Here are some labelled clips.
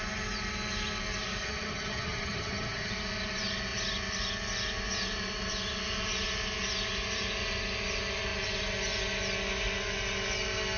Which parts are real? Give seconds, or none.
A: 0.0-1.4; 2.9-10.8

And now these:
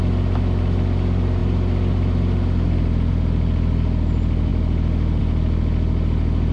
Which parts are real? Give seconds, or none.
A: 0.0-6.5

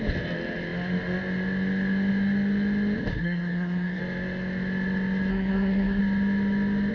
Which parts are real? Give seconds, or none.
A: 0.0-3.1; 4.0-5.3; 6.0-6.9

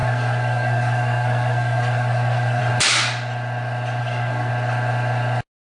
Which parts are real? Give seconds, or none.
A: 2.6-4.0; 4.5-5.7

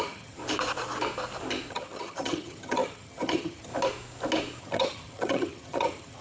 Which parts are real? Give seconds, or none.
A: 0.4-1.7; 3.7-4.6